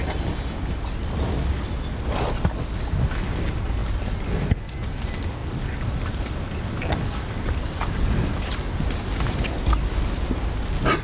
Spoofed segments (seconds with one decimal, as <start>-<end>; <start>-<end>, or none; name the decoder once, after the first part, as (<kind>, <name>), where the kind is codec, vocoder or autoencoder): none